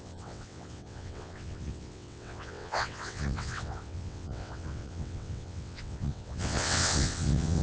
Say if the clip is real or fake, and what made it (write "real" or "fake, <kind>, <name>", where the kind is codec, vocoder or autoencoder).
fake, vocoder, WaveNeXt